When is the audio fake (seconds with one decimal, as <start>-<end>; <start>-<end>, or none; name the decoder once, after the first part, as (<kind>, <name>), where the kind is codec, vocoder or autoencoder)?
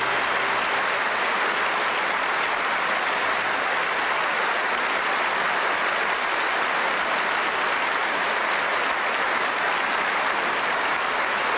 none